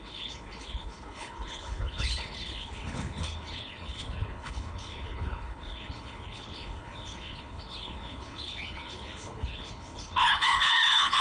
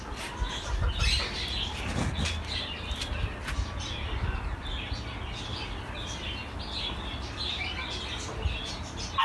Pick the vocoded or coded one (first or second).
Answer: first